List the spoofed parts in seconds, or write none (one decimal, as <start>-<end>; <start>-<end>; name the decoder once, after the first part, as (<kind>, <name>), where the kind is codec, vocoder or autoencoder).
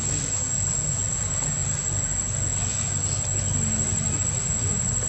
none